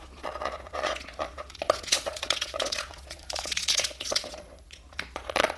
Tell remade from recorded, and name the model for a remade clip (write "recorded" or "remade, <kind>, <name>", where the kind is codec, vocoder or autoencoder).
remade, vocoder, Vocos